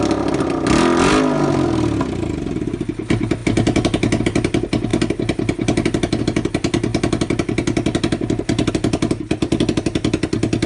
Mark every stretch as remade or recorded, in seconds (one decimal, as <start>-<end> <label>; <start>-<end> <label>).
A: 0.0-10.7 recorded

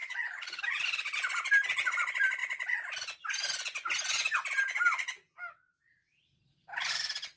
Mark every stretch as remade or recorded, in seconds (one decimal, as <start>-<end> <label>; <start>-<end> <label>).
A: 0.0-0.6 remade; 0.6-7.4 recorded

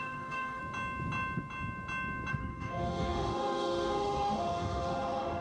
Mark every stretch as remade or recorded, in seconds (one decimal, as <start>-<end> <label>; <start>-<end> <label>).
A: 0.0-0.6 remade; 0.6-2.3 recorded; 2.3-5.4 remade

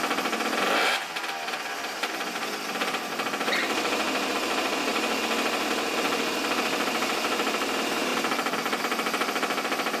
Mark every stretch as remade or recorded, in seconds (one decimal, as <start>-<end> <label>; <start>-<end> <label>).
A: 0.0-4.9 remade; 4.9-6.5 recorded; 6.5-10.0 remade

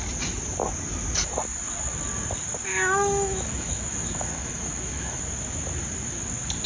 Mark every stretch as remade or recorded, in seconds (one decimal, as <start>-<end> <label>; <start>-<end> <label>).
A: 0.0-2.7 recorded; 2.7-5.2 remade; 5.2-6.7 recorded

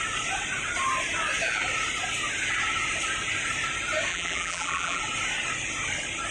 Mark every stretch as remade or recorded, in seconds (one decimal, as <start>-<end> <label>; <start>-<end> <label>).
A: 0.0-4.1 recorded; 4.1-5.0 remade; 5.0-6.3 recorded

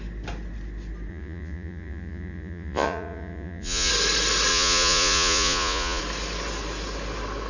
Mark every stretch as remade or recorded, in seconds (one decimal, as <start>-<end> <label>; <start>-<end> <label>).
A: 0.0-1.1 recorded; 1.1-3.9 remade; 3.9-4.5 recorded; 4.5-6.0 remade; 6.0-7.5 recorded

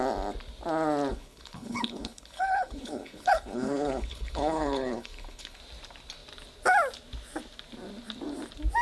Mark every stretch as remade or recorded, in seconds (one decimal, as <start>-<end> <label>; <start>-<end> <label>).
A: 0.0-1.1 recorded; 1.1-5.6 remade; 5.6-8.8 recorded